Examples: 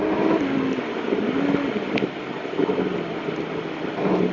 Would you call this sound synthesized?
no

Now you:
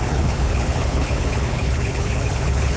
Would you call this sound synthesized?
yes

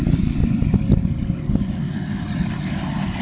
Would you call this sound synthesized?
no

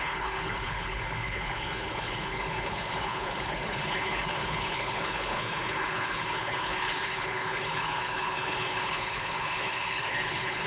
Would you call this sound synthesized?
yes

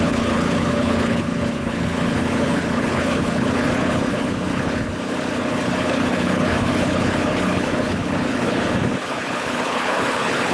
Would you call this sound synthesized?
yes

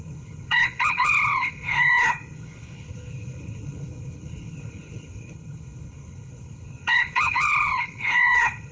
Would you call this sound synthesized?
yes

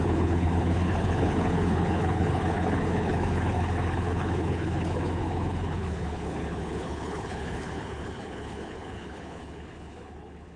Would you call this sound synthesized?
yes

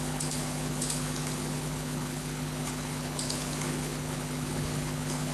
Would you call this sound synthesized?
yes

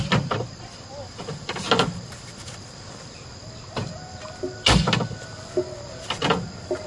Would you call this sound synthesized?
no